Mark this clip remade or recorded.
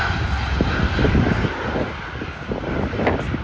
recorded